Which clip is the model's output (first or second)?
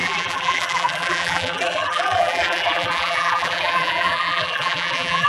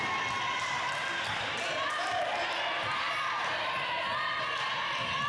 first